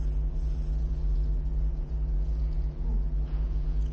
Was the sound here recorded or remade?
remade